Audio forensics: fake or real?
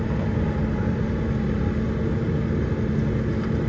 real